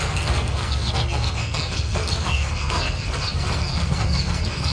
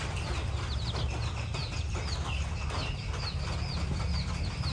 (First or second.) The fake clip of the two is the first